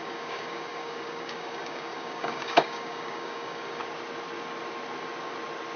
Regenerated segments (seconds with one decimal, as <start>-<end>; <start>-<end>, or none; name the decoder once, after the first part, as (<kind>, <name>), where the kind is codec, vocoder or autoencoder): 0.0-3.8 (codec, DAC)